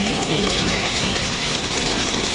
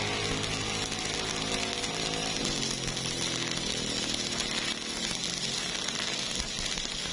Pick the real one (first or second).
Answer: second